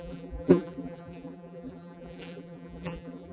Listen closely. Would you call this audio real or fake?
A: fake